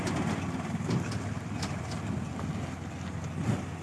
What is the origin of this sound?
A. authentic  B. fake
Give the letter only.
A